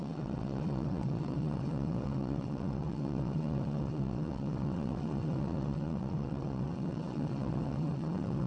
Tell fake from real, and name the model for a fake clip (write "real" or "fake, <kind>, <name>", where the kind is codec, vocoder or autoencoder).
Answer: fake, vocoder, WaveNeXt